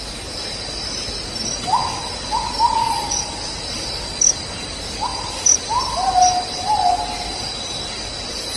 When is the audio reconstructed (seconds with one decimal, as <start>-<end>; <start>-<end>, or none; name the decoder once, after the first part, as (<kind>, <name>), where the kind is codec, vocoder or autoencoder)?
5.1-6.3 (vocoder, BigVGAN v2)